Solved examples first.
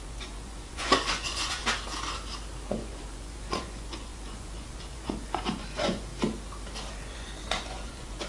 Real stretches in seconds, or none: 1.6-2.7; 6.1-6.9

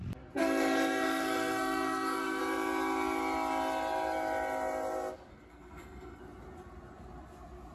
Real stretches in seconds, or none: 0.0-0.4; 2.4-5.3; 6.2-7.7